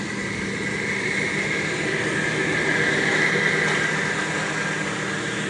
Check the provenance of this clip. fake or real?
real